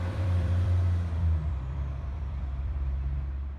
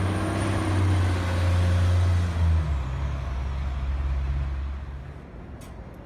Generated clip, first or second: first